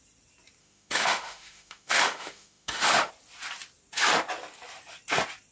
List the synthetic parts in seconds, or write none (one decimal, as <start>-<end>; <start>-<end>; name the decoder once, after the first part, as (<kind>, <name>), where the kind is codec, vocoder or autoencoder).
0.6-3.1 (autoencoder, DAC-VAE)